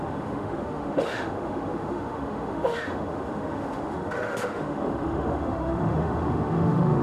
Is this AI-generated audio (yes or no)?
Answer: yes